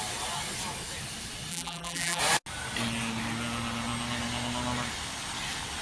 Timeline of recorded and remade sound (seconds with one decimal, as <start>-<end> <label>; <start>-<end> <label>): 0.0-1.5 recorded; 1.5-2.2 remade; 2.2-5.8 recorded